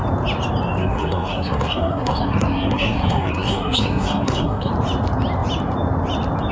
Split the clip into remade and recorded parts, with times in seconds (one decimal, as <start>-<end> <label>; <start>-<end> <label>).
0.0-0.8 recorded; 0.8-4.7 remade; 4.7-6.5 recorded